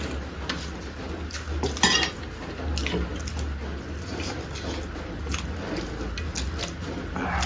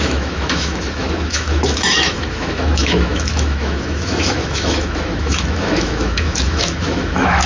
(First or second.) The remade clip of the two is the second